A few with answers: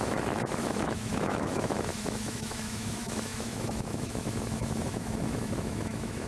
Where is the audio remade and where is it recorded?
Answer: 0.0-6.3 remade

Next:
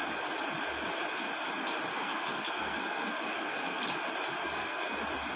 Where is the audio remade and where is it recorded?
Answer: 0.0-1.9 recorded; 1.9-3.8 remade; 3.8-4.4 recorded; 4.4-5.0 remade; 5.0-5.4 recorded

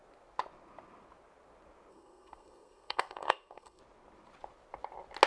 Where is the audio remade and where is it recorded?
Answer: 0.0-1.9 recorded; 1.9-3.8 remade; 3.8-5.3 recorded

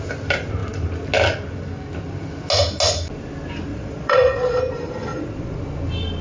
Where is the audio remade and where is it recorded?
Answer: 0.0-3.7 recorded; 3.7-4.6 remade; 4.6-5.1 recorded; 5.1-5.6 remade; 5.6-6.2 recorded

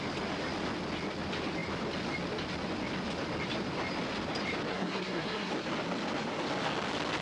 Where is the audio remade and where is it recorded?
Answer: 0.0-4.7 recorded; 4.7-5.5 remade; 5.5-7.2 recorded

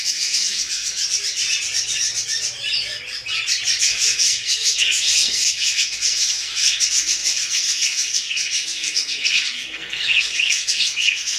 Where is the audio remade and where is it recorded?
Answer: 0.0-1.0 remade; 1.0-3.8 recorded; 3.8-11.4 remade